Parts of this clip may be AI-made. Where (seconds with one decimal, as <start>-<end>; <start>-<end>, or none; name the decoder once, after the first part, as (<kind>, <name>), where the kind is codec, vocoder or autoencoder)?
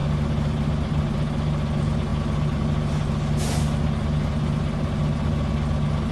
none